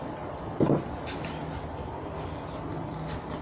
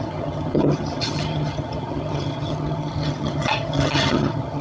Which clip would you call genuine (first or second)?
first